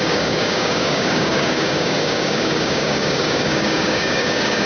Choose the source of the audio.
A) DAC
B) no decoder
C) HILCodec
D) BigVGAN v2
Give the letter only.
A